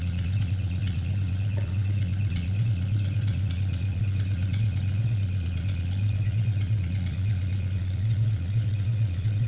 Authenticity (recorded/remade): remade